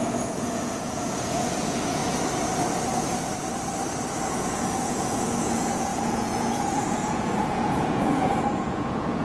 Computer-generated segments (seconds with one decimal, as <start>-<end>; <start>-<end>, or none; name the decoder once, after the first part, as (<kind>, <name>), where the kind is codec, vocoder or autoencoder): 0.0-2.0 (vocoder, Vocos); 4.3-9.2